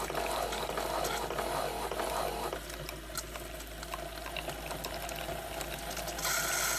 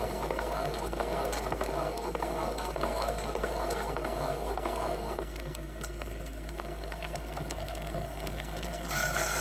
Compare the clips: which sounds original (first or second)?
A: first